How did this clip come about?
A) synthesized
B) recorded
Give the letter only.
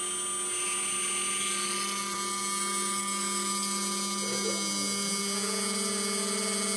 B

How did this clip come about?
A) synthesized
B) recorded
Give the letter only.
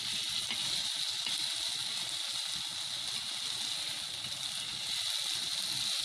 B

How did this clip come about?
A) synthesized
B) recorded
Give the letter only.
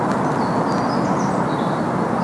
B